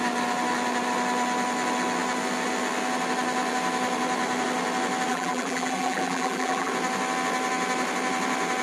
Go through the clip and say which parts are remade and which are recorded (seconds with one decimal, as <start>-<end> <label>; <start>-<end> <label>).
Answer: 0.0-5.1 recorded; 5.1-6.7 remade; 6.7-8.6 recorded